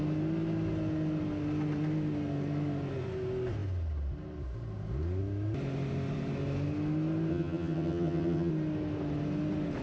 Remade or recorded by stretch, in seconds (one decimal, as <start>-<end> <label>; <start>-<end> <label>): 0.0-7.3 recorded; 7.3-8.5 remade; 8.5-9.8 recorded